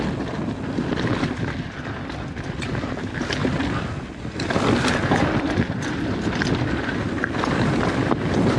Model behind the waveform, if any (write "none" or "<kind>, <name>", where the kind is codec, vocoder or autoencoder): none